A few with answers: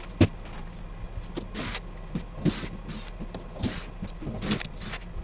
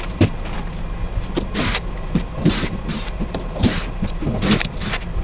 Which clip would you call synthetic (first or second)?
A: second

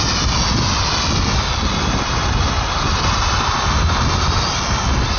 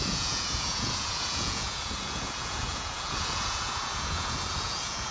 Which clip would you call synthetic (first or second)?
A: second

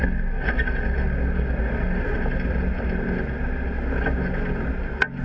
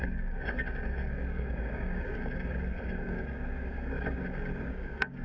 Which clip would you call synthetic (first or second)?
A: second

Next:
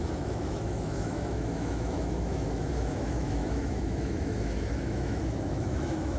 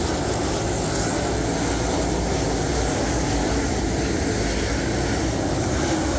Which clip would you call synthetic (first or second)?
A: first